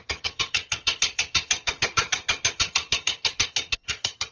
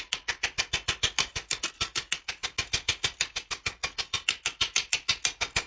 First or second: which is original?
second